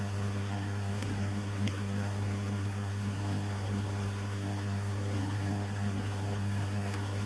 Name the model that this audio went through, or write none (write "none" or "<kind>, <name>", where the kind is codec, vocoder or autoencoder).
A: codec, SNAC